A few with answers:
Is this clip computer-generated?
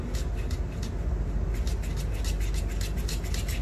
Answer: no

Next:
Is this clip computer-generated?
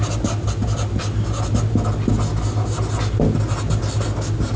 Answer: no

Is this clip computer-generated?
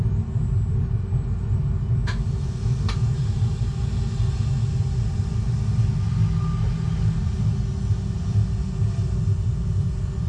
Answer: no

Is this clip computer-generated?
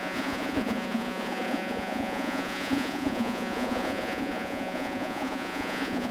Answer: yes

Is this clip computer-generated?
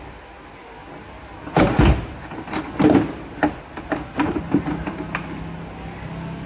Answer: no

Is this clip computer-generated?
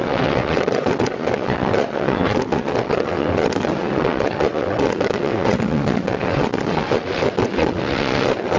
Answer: yes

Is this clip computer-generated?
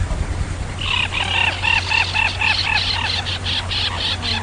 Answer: no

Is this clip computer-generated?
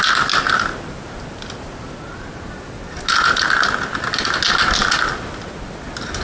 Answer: no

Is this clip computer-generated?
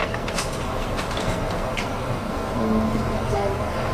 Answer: yes